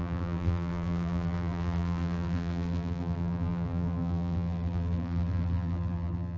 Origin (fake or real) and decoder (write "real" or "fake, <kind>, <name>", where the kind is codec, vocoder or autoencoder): fake, vocoder, BigVGAN v2